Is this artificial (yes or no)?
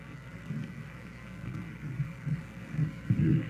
yes